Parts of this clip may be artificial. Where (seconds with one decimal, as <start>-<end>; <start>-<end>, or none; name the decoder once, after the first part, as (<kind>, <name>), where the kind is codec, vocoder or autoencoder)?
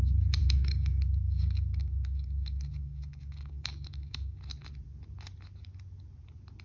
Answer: 0.4-4.4 (codec, DAC)